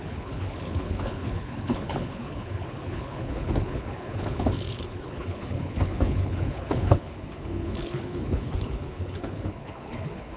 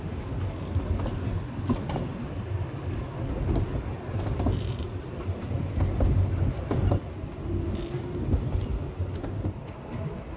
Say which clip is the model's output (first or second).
first